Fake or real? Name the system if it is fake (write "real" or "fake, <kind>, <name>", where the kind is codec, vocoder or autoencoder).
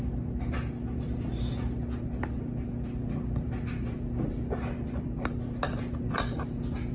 real